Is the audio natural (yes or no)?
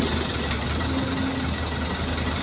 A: yes